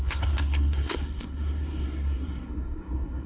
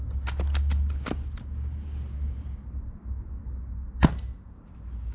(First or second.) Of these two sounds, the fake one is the first